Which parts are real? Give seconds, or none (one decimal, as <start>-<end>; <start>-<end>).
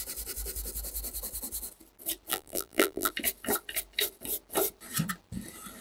0.0-2.3; 3.1-5.8